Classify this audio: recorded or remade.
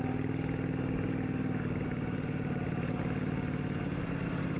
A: recorded